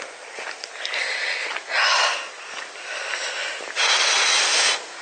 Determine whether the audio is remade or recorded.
recorded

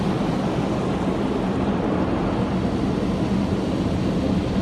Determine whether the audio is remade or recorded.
recorded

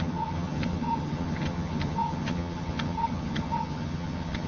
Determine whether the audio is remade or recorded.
remade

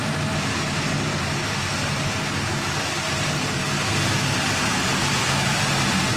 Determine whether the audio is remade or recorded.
recorded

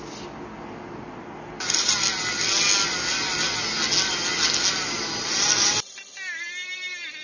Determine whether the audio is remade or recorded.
recorded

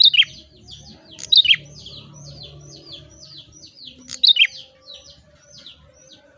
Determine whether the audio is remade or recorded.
recorded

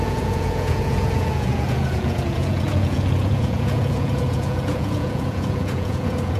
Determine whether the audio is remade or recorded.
remade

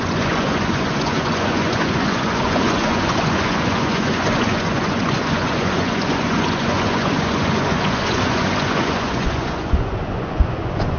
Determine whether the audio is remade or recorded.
remade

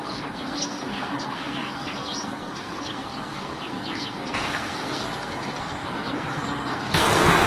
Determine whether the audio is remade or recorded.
remade